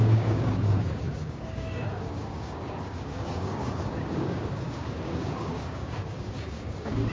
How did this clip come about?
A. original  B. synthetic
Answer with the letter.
B